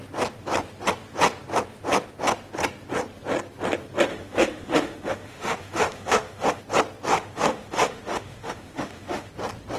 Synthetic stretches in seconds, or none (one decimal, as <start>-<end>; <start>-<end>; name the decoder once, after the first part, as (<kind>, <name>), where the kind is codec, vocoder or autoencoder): 4.1-6.6 (autoencoder, DAC-VAE); 7.1-9.3